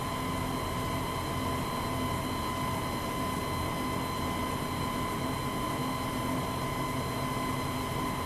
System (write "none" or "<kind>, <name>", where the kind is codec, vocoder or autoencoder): none